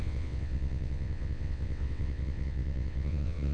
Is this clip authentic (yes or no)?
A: no